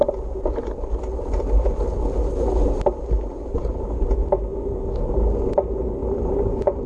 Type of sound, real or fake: real